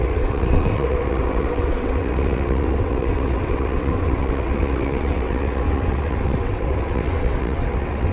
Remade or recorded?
remade